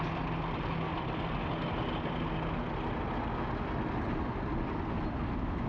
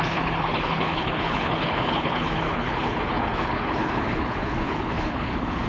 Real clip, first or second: first